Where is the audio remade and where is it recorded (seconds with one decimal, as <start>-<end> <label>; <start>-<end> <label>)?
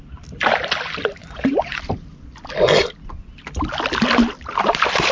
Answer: 0.0-1.2 recorded; 1.2-1.8 remade; 1.8-5.1 recorded